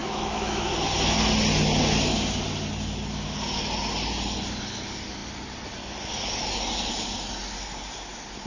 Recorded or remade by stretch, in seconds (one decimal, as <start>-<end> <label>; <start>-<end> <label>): 0.0-0.7 remade; 0.7-8.5 recorded